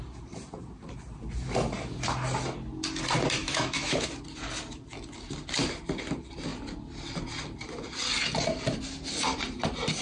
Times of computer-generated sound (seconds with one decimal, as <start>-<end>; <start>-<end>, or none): 3.4-4.1